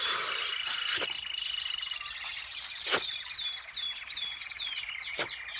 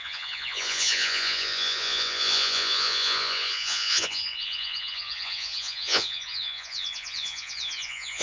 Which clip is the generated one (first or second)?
second